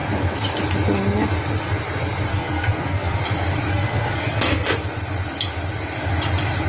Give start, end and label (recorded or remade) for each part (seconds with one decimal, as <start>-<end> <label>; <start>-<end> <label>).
0.0-2.3 recorded; 2.3-3.2 remade; 3.2-3.7 recorded; 3.7-4.7 remade; 4.7-6.7 recorded